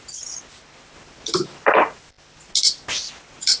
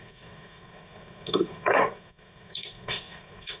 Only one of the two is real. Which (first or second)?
first